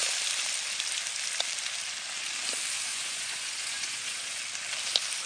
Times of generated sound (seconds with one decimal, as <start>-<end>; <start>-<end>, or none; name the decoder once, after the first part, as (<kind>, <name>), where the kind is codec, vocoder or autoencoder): 2.9-4.4 (vocoder, Vocos)